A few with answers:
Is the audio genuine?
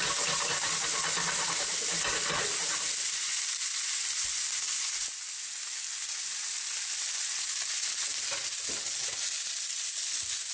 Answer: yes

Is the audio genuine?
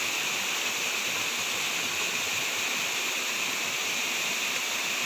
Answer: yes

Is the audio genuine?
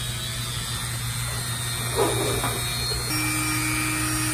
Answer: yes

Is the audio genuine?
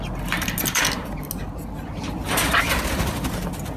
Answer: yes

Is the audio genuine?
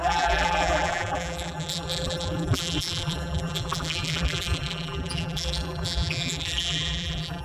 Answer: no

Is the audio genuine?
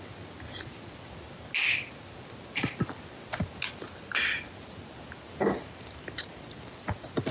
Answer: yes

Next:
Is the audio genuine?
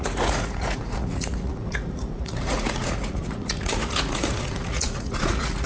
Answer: no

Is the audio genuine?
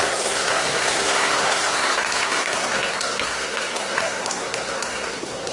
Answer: no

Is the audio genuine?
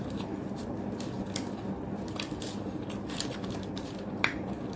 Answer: yes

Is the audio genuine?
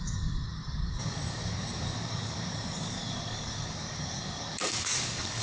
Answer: no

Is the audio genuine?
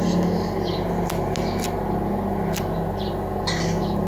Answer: yes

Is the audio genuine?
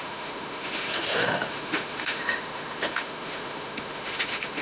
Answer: no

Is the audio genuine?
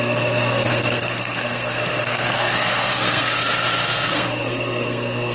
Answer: no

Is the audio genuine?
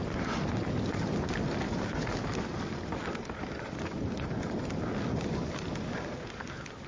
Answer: yes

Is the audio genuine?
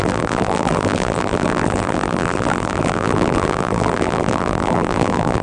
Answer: no